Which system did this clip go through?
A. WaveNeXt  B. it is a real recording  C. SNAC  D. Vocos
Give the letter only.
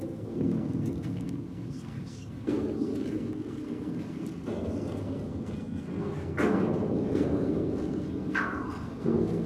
C